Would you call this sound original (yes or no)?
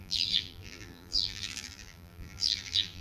no